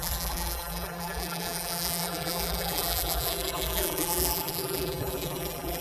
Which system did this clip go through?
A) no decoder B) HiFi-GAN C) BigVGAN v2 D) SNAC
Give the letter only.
C